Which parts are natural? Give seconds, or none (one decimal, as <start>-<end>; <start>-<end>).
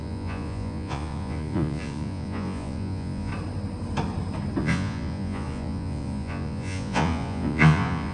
3.3-4.6